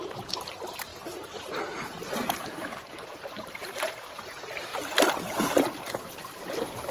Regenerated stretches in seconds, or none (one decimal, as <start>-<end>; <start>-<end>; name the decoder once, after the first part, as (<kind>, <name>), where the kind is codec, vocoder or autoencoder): 0.0-4.7 (vocoder, BigVGAN v2); 5.8-6.2